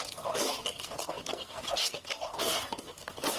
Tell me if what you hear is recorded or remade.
remade